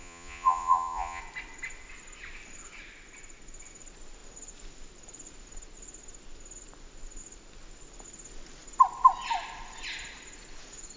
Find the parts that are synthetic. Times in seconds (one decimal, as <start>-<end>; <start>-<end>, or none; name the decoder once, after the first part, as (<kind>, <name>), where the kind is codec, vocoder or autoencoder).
0.0-1.2 (vocoder, Vocos)